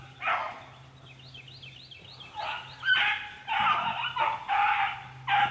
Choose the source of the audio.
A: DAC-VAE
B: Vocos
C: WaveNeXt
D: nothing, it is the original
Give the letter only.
D